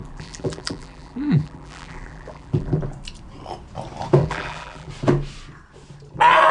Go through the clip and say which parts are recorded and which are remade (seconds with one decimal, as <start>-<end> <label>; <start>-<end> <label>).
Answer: 0.0-2.8 remade; 2.8-4.2 recorded; 4.2-4.9 remade; 4.9-6.5 recorded